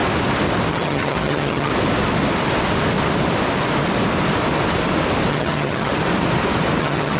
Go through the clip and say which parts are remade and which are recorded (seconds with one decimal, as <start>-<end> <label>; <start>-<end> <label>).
0.0-0.7 recorded; 0.7-1.7 remade; 1.7-5.3 recorded; 5.3-5.9 remade; 5.9-6.8 recorded; 6.8-7.2 remade